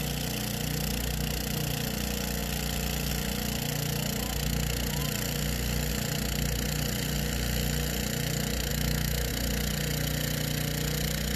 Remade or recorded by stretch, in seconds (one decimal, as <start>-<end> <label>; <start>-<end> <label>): 0.0-8.7 recorded; 8.7-9.3 remade; 9.3-11.4 recorded